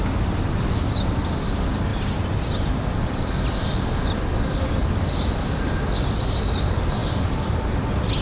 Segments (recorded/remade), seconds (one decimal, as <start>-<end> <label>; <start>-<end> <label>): 0.0-1.9 recorded; 1.9-3.3 remade; 3.3-8.2 recorded